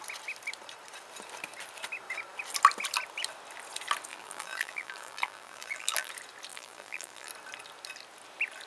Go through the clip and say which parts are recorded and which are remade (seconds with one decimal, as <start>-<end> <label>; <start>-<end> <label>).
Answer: 0.0-4.1 recorded; 4.1-6.1 remade; 6.1-6.5 recorded; 6.5-7.3 remade; 7.3-8.7 recorded